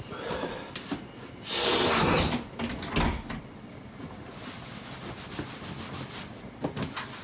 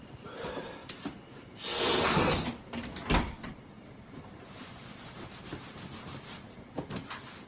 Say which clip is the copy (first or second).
second